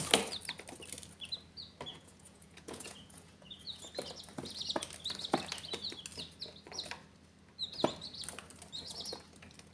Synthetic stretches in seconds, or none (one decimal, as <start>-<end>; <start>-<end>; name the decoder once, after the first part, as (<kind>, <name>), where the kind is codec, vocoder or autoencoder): 1.9-3.9 (vocoder, Vocos)